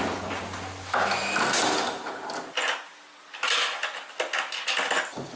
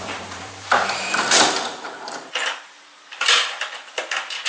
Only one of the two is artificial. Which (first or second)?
second